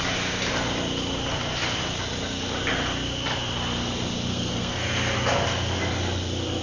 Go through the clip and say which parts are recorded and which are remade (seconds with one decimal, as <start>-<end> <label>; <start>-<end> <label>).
0.0-4.3 recorded; 4.3-4.8 remade; 4.8-6.6 recorded